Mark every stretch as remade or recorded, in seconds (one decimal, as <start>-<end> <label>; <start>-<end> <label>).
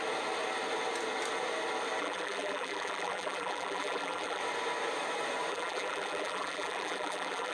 0.0-2.0 recorded; 2.0-4.4 remade; 4.4-5.5 recorded; 5.5-7.5 remade